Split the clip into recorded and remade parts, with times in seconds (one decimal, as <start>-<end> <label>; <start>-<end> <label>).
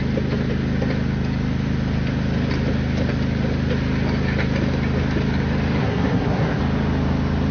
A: 0.0-5.8 recorded; 5.8-6.6 remade; 6.6-7.5 recorded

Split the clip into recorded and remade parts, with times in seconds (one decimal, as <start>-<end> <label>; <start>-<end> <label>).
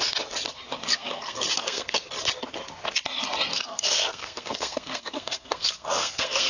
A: 0.0-0.9 recorded; 0.9-2.1 remade; 2.1-3.5 recorded; 3.5-6.5 remade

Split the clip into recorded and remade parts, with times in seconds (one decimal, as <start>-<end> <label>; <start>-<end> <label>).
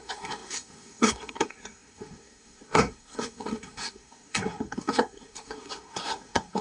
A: 0.0-6.6 remade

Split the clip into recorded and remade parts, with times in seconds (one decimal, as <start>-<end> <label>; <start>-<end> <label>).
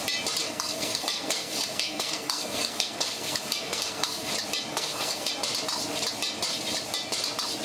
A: 0.0-0.4 recorded; 0.4-4.3 remade; 4.3-4.7 recorded; 4.7-5.3 remade; 5.3-7.6 recorded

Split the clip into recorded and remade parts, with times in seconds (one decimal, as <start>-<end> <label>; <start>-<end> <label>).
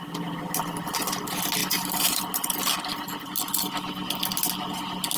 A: 0.0-5.2 recorded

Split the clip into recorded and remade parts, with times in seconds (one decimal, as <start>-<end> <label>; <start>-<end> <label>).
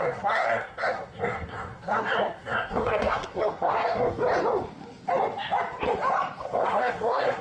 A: 0.0-4.2 remade; 4.2-6.4 recorded; 6.4-7.4 remade